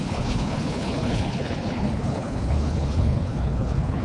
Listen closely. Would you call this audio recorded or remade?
remade